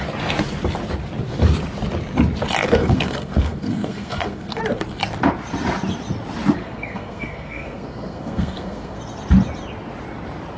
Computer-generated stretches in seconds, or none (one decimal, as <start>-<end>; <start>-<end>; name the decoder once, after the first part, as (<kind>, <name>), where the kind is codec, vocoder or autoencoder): 2.8-4.6 (codec, SNAC); 6.6-9.0